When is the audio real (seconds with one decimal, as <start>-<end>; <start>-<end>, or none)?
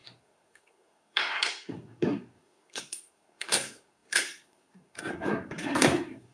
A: none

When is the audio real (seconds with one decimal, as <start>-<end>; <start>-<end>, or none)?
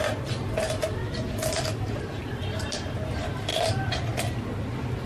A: 3.5-5.1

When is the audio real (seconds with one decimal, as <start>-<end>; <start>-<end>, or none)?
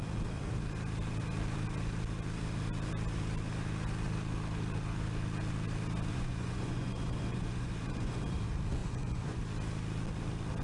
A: 0.0-6.1; 8.2-8.8; 9.4-10.6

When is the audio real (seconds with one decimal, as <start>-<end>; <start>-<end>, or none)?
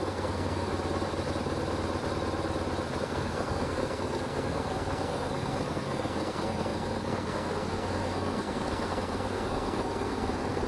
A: 0.7-3.0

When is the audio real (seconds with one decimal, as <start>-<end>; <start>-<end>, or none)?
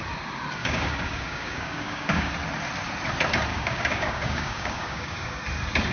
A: 0.0-0.6; 2.3-3.5; 5.4-5.9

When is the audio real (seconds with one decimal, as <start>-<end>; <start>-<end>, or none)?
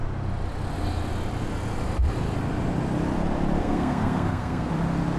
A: 0.0-3.6; 4.7-5.2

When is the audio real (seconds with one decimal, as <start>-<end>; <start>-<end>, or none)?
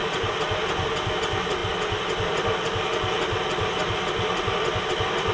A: 0.0-5.3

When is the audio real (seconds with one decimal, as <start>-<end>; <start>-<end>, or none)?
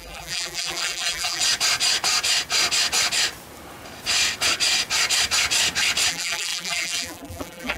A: 1.4-6.1